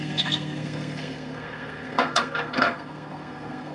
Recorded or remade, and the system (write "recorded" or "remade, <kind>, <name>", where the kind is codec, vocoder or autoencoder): remade, codec, SNAC